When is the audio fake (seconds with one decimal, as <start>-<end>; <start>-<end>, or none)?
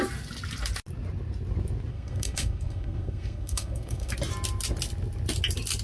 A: 1.9-4.1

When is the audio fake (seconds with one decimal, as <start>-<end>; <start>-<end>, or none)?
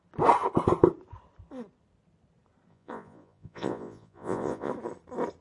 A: 2.7-4.7